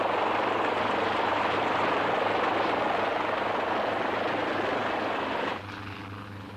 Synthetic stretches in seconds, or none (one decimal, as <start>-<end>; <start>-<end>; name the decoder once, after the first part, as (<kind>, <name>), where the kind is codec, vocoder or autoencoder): none